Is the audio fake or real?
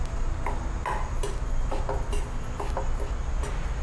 real